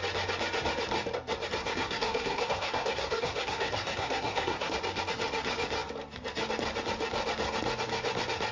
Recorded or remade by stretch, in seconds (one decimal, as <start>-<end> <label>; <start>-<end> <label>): 0.0-1.6 recorded; 1.6-4.7 remade; 4.7-8.5 recorded